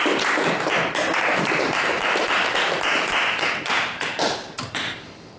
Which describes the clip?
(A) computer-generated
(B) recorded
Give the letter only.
A